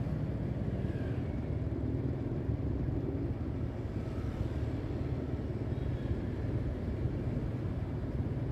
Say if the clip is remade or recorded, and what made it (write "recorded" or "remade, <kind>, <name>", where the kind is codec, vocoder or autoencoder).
recorded